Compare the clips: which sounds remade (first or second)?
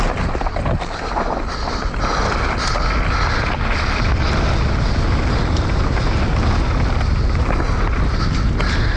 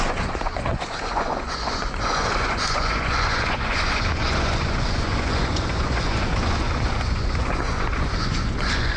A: second